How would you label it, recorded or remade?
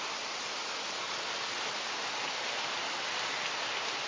recorded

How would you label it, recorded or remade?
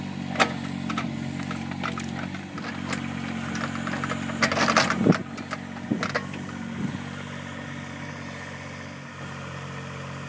recorded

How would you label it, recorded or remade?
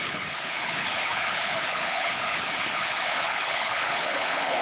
remade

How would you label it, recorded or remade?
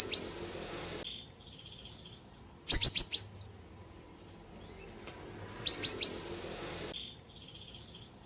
recorded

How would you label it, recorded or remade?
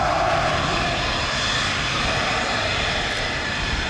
recorded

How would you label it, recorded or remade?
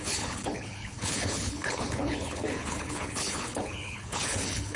remade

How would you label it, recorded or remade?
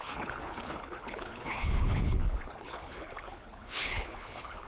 remade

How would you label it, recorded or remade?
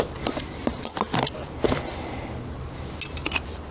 recorded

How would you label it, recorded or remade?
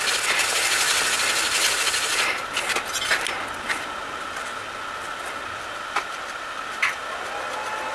recorded